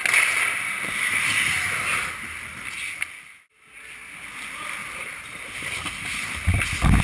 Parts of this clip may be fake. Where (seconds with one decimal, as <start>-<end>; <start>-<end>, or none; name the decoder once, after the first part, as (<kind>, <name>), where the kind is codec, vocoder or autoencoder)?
4.8-7.0 (vocoder, BigVGAN v2)